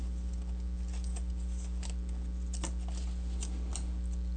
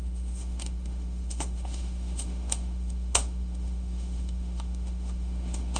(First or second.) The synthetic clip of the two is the second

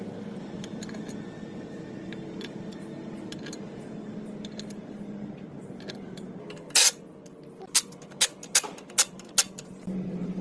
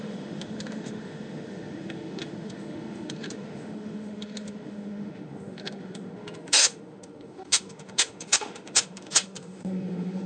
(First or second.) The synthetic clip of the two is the second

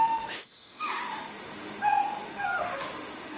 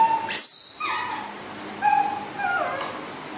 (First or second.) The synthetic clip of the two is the first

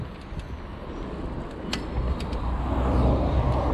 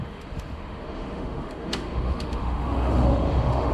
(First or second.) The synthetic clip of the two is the second